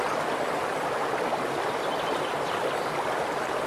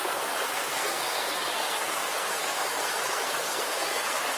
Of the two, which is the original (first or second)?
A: first